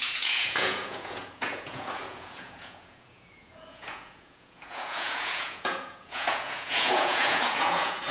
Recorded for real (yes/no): no